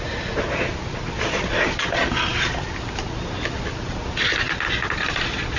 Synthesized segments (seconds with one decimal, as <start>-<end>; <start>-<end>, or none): none